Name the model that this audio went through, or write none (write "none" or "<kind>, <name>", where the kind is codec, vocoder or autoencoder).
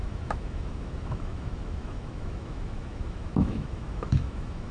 autoencoder, DAC-VAE